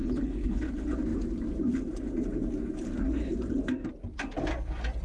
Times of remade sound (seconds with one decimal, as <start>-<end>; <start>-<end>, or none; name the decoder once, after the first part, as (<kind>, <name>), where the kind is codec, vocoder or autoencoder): 0.0-0.7 (codec, HILCodec)